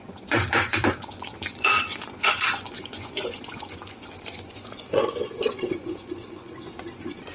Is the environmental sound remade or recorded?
remade